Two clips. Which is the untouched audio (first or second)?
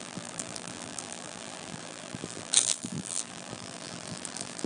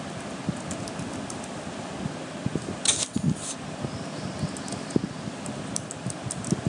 second